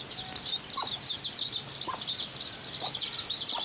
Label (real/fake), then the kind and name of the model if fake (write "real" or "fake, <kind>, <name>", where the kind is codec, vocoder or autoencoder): real